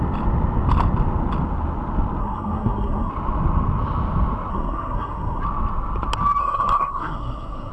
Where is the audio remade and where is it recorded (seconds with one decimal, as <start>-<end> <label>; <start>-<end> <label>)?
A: 0.0-2.2 recorded; 2.2-3.1 remade; 3.1-4.5 recorded; 4.5-5.4 remade; 5.4-6.4 recorded; 6.4-7.7 remade